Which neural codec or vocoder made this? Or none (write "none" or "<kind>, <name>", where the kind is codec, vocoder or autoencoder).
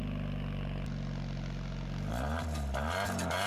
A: none